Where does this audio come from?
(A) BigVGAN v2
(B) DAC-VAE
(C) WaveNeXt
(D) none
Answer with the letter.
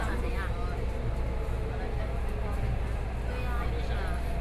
D